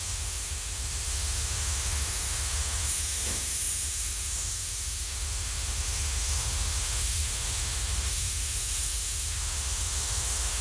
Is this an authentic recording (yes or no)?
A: no